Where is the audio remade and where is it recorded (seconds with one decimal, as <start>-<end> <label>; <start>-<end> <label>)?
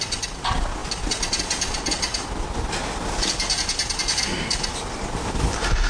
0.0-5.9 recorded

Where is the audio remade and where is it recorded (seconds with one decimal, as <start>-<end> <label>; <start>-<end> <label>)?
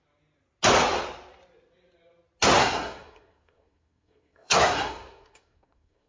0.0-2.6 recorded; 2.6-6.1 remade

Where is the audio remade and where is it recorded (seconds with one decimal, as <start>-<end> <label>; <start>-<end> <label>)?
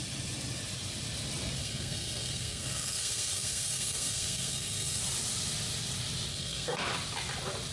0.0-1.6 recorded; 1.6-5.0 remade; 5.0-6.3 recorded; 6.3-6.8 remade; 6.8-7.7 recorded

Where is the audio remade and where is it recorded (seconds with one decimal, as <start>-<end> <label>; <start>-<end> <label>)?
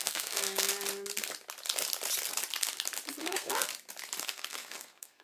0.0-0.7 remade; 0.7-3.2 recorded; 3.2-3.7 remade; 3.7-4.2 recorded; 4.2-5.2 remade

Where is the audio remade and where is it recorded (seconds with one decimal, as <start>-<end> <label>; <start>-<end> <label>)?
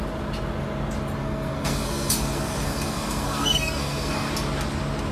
0.0-1.2 recorded; 1.2-4.3 remade; 4.3-5.1 recorded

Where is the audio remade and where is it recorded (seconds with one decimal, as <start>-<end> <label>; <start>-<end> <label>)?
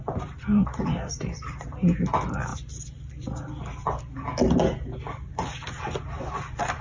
0.0-6.8 recorded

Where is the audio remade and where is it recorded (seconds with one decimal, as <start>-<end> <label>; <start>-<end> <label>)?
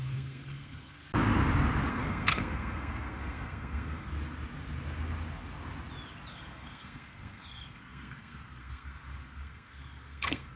0.0-1.0 remade; 1.0-1.9 recorded; 1.9-4.1 remade; 4.1-6.3 recorded; 6.3-10.6 remade